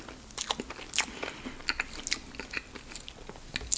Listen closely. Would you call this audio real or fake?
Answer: real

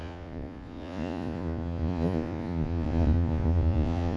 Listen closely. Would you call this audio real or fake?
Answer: fake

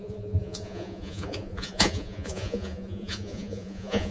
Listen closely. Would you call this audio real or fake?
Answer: fake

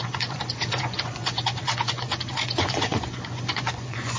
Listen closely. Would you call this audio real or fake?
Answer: fake